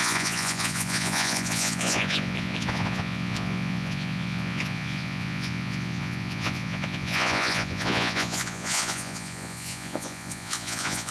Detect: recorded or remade remade